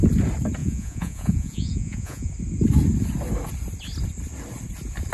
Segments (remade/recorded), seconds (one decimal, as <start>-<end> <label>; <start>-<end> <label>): 0.0-0.6 recorded; 0.6-2.3 remade; 2.3-5.1 recorded

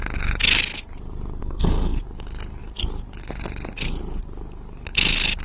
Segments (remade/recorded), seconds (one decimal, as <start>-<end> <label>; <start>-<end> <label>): 0.0-1.4 recorded; 1.4-2.0 remade; 2.0-5.4 recorded

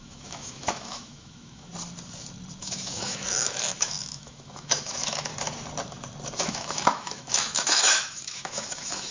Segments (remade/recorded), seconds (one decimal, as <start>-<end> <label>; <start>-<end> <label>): 0.0-1.7 remade; 1.7-2.6 recorded; 2.6-5.3 remade; 5.3-6.4 recorded; 6.4-9.1 remade

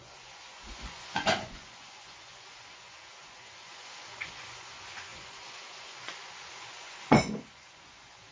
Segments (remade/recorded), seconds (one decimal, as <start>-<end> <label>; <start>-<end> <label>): 0.0-8.3 remade

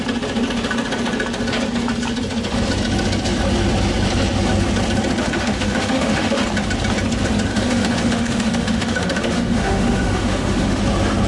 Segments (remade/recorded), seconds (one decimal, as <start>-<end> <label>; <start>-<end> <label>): 0.0-5.2 recorded; 5.2-6.4 remade; 6.4-7.5 recorded; 7.5-10.8 remade; 10.8-11.3 recorded

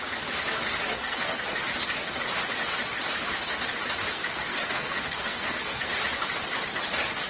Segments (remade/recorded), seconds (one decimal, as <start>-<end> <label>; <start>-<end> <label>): 0.0-1.0 recorded; 1.0-1.5 remade; 1.5-4.0 recorded; 4.0-6.0 remade; 6.0-7.3 recorded

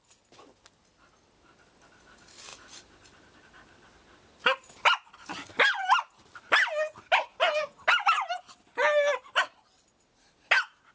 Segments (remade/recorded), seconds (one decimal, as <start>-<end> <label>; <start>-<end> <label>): 0.0-10.9 recorded

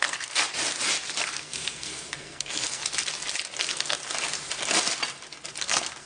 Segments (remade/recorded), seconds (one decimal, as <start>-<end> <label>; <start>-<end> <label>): 0.0-0.4 remade; 0.4-1.2 recorded; 1.2-2.8 remade; 2.8-3.6 recorded; 3.6-4.0 remade; 4.0-5.6 recorded; 5.6-6.1 remade